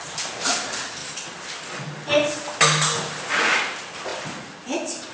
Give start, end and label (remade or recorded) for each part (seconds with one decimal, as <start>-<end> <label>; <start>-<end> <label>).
0.0-5.1 recorded